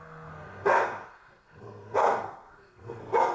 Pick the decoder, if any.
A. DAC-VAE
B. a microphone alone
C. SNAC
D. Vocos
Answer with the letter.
C